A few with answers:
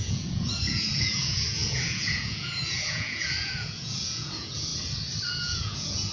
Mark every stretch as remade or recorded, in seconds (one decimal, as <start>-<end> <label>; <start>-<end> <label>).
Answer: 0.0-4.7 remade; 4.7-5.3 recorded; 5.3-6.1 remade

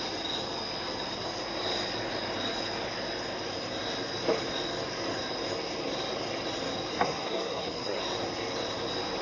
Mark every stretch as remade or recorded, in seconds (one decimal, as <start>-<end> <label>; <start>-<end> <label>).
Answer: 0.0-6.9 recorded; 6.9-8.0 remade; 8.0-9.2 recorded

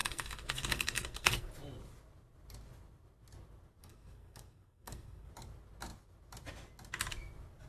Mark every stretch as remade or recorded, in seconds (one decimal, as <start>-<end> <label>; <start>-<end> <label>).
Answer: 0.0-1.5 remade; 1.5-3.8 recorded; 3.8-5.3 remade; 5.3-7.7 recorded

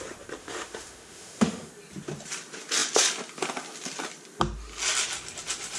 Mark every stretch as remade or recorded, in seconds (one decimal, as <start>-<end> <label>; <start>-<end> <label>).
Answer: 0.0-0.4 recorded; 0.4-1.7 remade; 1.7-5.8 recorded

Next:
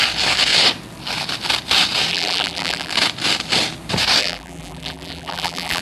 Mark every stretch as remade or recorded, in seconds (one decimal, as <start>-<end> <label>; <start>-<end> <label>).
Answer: 0.0-2.1 recorded; 2.1-2.9 remade; 2.9-4.2 recorded; 4.2-5.8 remade

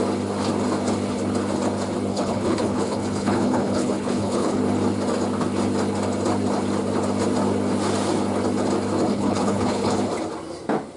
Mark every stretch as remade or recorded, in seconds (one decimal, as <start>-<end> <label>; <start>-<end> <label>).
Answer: 0.0-2.1 recorded; 2.1-4.6 remade; 4.6-9.1 recorded; 9.1-10.0 remade; 10.0-11.0 recorded

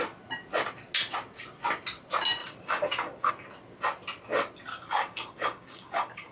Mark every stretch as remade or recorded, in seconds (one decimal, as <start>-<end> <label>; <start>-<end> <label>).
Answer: 0.0-2.4 recorded; 2.4-3.3 remade; 3.3-4.7 recorded; 4.7-6.3 remade

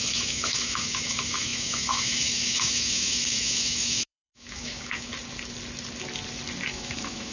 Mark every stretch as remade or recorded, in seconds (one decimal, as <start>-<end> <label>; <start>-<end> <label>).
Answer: 0.0-5.1 remade; 5.1-6.7 recorded; 6.7-7.3 remade